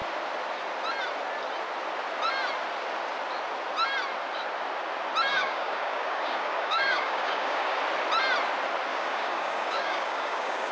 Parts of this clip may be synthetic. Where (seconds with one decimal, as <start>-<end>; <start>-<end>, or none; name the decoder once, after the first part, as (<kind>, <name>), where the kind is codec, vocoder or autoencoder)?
5.3-7.8 (codec, DAC); 8.9-10.7